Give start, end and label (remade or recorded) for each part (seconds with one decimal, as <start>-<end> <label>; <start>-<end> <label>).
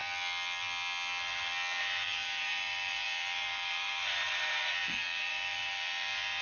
0.0-1.8 recorded; 1.8-6.4 remade